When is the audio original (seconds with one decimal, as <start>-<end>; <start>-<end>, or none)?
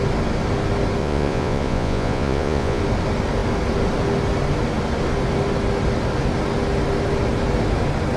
0.0-1.0; 2.8-8.2